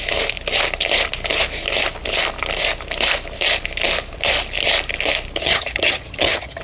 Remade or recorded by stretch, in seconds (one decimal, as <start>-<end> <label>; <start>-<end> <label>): 0.0-5.4 recorded; 5.4-6.6 remade